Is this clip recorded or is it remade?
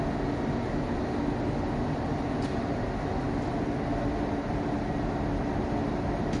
recorded